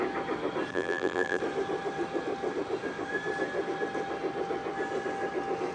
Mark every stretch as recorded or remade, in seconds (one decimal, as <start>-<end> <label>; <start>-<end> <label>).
0.0-0.7 recorded; 0.7-1.4 remade; 1.4-5.7 recorded